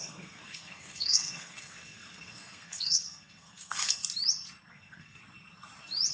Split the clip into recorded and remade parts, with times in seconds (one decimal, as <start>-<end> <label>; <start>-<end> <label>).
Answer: 0.0-4.0 remade; 4.0-4.7 recorded; 4.7-5.2 remade; 5.2-6.1 recorded